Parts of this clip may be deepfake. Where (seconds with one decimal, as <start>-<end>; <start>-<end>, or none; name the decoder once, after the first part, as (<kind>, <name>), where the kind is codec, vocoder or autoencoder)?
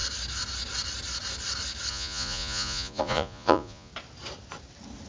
1.9-3.9 (vocoder, Vocos)